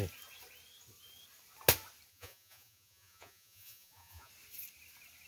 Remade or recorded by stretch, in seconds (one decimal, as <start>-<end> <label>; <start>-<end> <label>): 0.0-2.1 recorded; 2.1-4.3 remade; 4.3-5.3 recorded